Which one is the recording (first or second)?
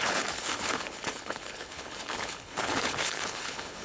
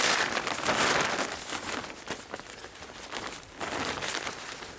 second